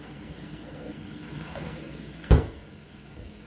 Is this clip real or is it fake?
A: fake